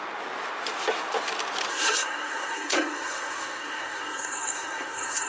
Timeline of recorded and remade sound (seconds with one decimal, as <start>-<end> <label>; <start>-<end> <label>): 0.0-1.7 recorded; 1.7-5.3 remade